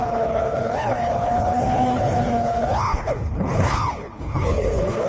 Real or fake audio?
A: fake